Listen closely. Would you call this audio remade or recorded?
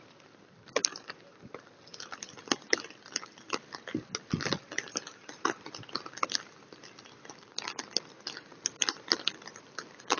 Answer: recorded